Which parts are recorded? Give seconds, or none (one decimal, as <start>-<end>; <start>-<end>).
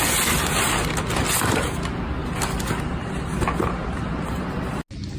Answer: 0.0-5.2